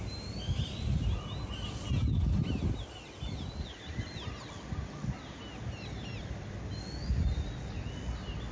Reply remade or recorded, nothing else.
recorded